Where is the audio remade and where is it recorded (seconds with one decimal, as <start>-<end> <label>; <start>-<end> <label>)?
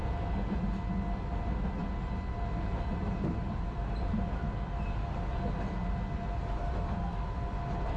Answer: 0.0-8.0 recorded